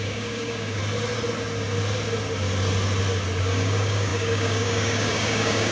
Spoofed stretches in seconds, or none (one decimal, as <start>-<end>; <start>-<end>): 0.0-0.8; 3.4-5.7